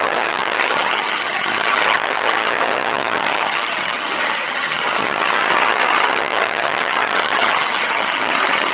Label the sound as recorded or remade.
remade